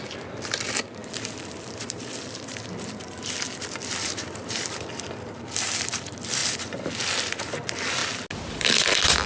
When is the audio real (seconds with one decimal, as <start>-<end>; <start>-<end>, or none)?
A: 8.0-8.5